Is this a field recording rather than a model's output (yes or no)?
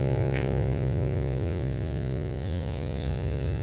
no